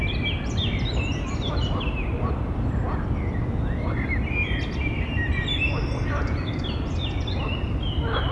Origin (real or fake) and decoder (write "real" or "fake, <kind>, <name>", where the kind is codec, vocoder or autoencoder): real